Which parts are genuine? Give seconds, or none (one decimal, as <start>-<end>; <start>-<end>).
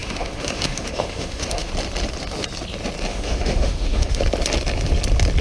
1.7-3.1; 4.2-5.4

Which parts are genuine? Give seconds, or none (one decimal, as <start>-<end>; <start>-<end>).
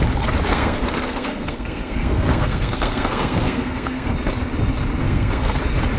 0.0-0.5; 4.1-5.0; 5.6-6.0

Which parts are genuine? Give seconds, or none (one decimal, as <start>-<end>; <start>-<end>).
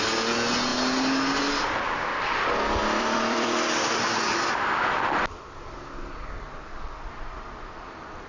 0.0-2.8; 4.8-8.3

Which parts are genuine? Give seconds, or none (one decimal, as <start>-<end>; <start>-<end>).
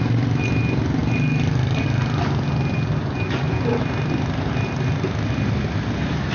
0.0-6.3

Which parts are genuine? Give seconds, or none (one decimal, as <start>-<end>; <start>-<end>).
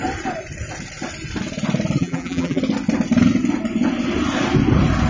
0.0-2.0; 2.6-5.1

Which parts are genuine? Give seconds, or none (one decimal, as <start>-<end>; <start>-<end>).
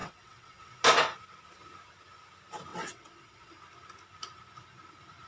0.8-2.7; 3.5-5.3